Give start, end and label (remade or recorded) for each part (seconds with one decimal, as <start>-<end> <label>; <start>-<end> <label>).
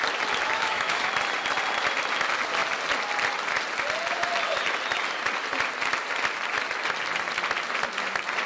0.0-0.4 recorded; 0.4-1.1 remade; 1.1-8.5 recorded